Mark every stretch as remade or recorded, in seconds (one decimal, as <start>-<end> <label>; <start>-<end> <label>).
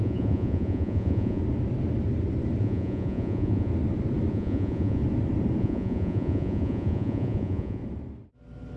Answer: 0.0-1.4 remade; 1.4-2.6 recorded; 2.6-3.7 remade; 3.7-4.3 recorded; 4.3-5.0 remade; 5.0-5.6 recorded; 5.6-7.8 remade; 7.8-8.8 recorded